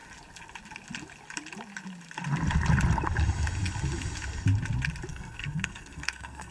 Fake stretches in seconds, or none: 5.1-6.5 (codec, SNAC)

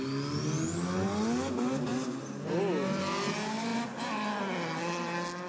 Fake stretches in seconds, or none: none

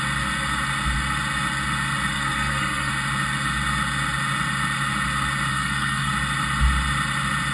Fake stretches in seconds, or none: 2.1-2.9 (codec, SNAC); 5.5-6.1

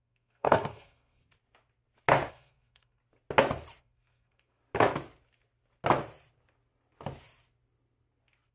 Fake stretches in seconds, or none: 0.0-1.2 (codec, SNAC); 2.3-3.0; 3.8-4.6

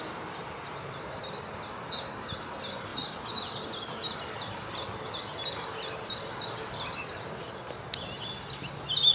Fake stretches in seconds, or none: none

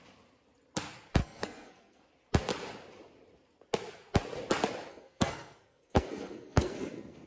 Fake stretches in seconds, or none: 1.2-2.0 (codec, SNAC); 4.9-7.3

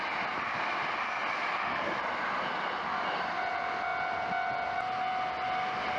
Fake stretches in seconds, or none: none